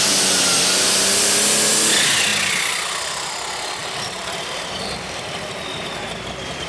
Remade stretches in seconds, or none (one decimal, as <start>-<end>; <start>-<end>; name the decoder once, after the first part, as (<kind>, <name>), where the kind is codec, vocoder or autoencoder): 3.8-5.2 (vocoder, BigVGAN v2)